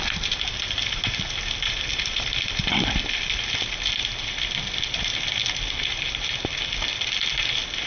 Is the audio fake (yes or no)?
no